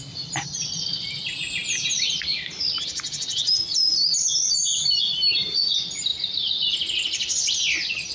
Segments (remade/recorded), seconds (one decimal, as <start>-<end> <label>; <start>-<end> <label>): 0.0-8.1 recorded